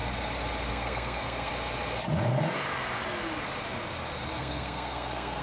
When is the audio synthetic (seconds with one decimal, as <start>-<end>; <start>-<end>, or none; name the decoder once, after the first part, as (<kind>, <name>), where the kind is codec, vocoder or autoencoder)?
0.7-1.5 (codec, SNAC); 4.4-5.4

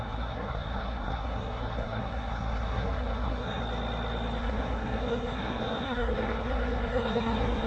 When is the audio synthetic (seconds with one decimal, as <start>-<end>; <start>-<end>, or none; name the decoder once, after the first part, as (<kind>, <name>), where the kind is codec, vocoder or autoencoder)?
0.0-3.6 (codec, SNAC); 4.4-7.7

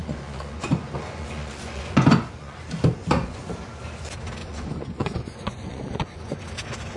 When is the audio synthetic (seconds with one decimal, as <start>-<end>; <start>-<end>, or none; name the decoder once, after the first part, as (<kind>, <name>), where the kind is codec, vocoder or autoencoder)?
0.0-2.6 (vocoder, Vocos); 3.0-3.5; 4.4-6.4

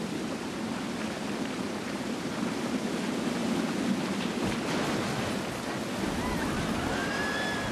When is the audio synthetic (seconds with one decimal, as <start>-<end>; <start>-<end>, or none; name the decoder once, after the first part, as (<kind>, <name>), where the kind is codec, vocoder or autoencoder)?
none

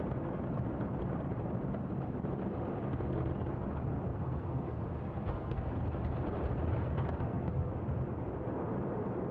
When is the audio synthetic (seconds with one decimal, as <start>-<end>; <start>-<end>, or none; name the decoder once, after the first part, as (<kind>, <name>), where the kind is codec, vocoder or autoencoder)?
4.1-5.7 (codec, SNAC); 6.5-7.7

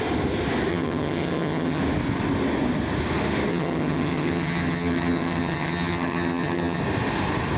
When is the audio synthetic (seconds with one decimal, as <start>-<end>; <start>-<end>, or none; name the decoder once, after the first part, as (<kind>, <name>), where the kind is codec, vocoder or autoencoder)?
0.7-1.8 (vocoder, HiFi-GAN); 3.5-6.8

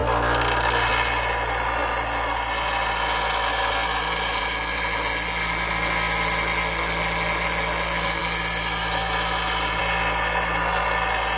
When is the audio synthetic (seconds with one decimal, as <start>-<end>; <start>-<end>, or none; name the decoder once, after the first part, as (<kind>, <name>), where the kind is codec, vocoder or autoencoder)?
none

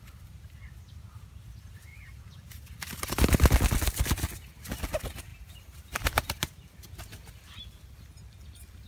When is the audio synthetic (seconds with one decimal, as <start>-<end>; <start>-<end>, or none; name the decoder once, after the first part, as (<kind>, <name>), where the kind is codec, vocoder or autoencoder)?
1.9-2.7 (vocoder, BigVGAN v2); 5.3-6.6